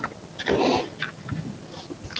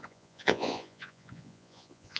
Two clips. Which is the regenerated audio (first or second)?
second